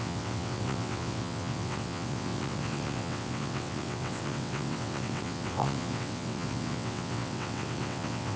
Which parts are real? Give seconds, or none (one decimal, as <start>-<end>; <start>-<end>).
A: none